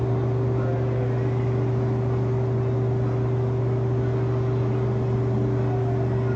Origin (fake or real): real